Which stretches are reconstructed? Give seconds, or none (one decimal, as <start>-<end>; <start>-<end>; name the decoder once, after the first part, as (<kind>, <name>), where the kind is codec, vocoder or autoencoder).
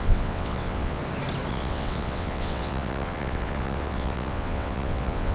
0.0-1.0 (vocoder, WaveNeXt); 1.5-5.3